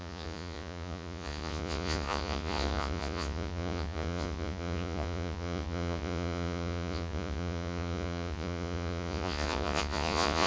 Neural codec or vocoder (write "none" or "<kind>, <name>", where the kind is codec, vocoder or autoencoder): vocoder, Vocos